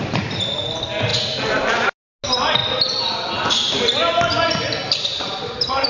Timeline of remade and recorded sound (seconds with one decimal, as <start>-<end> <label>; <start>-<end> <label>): 0.0-5.1 recorded; 5.1-5.9 remade